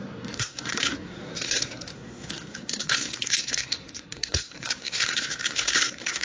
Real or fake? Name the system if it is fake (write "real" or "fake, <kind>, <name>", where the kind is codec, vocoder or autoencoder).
fake, codec, SNAC